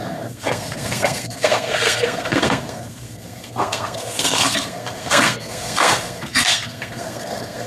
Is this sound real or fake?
fake